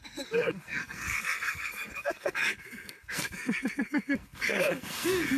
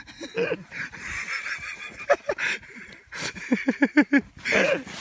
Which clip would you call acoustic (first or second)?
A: second